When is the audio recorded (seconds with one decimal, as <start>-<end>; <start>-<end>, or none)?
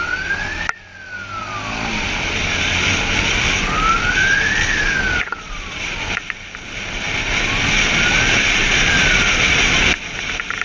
0.0-10.6